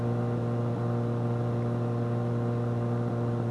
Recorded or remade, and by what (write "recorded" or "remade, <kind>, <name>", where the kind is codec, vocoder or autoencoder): recorded